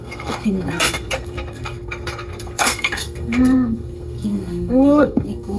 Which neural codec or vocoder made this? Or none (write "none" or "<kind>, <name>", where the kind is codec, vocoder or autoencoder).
codec, SNAC